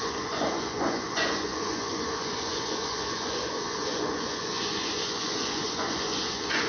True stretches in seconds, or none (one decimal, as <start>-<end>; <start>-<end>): none